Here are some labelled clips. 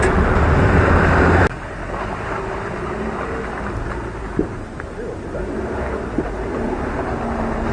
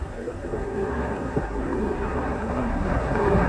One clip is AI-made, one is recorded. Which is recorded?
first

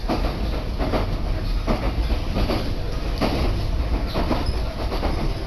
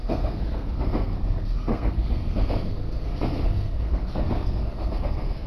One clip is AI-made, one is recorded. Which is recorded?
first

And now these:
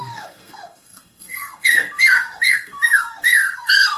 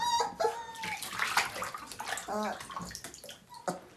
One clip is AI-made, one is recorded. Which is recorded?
second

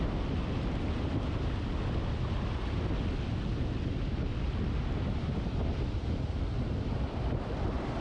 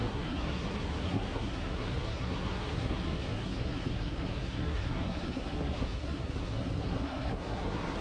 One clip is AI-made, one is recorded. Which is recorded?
first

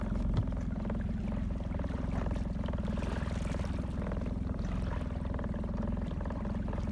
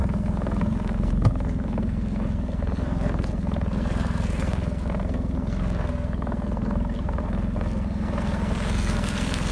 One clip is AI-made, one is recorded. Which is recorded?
first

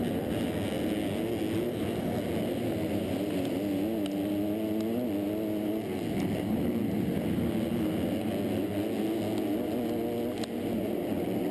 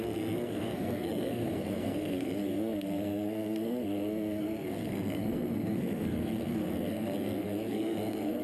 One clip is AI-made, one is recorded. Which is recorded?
first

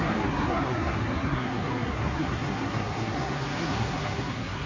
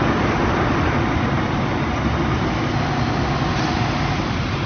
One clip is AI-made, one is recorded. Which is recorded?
second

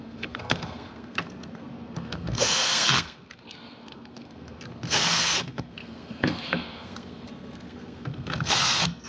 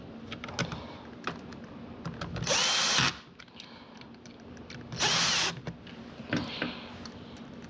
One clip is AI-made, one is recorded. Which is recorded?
second